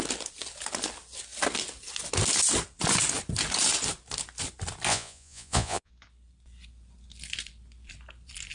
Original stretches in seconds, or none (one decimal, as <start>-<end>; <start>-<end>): 0.0-4.9; 5.9-8.5